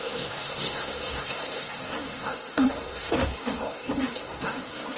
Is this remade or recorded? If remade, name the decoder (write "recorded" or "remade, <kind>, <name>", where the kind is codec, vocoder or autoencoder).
remade, codec, SNAC